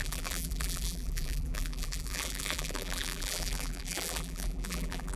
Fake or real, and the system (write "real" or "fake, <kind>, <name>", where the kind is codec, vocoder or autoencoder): fake, vocoder, BigVGAN v2